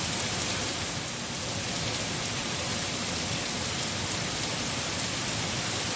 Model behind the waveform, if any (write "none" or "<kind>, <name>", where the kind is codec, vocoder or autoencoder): none